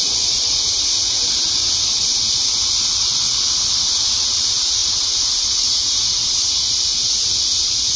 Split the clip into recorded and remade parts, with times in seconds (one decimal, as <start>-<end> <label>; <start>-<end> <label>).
0.0-8.0 recorded